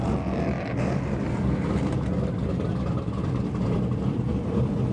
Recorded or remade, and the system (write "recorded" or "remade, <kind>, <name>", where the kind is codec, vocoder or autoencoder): remade, vocoder, BigVGAN v2